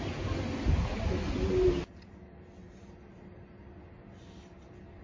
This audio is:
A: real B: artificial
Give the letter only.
A